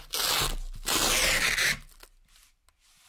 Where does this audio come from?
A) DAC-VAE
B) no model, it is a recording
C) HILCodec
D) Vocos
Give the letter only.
B